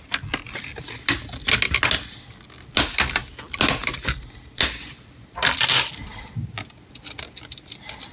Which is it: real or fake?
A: real